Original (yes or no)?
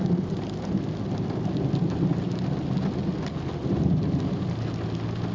yes